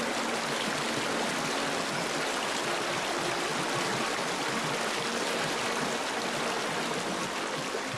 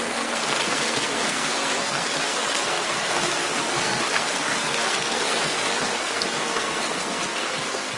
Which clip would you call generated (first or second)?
second